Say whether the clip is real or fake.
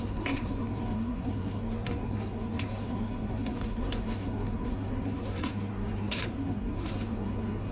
fake